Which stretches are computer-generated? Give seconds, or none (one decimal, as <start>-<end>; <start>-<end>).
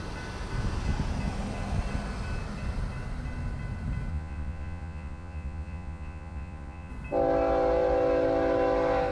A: 4.1-6.9